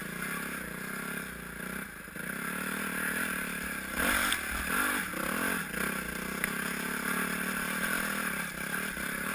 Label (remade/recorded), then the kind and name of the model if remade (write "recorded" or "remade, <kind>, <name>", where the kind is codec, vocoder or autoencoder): recorded